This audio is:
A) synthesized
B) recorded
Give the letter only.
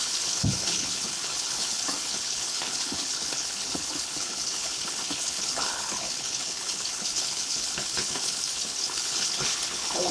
A